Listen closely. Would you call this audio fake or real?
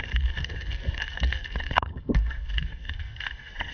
fake